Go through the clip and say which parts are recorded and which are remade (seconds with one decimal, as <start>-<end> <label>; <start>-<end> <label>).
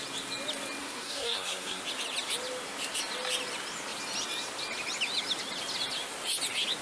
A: 0.0-0.8 recorded; 0.8-1.8 remade; 1.8-6.8 recorded